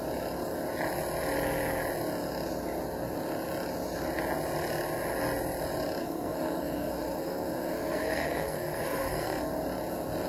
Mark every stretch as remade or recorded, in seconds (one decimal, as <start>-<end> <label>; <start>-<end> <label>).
0.0-6.0 recorded; 6.0-9.5 remade; 9.5-10.3 recorded